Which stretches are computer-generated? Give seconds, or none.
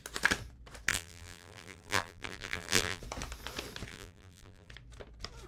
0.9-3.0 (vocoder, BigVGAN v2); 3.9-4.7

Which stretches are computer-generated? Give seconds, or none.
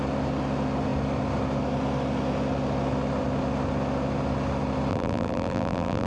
4.9-6.1 (vocoder, BigVGAN v2)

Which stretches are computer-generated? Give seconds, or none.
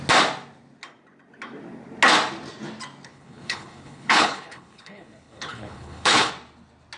3.1-6.3 (codec, HILCodec)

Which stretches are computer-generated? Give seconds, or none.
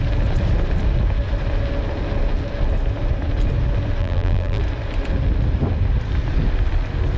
4.0-4.6 (vocoder, BigVGAN v2)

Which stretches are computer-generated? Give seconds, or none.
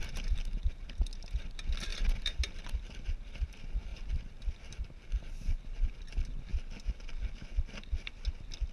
1.9-3.4 (vocoder, BigVGAN v2); 3.9-4.8; 6.5-8.2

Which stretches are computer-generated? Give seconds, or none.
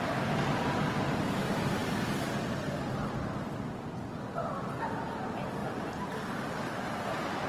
none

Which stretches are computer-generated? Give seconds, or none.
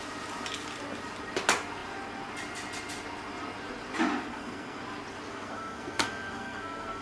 4.3-4.8 (codec, SNAC); 5.3-7.0